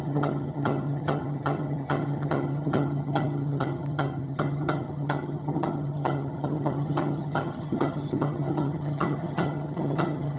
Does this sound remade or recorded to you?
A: remade